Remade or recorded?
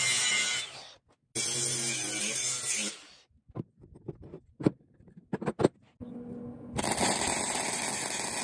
recorded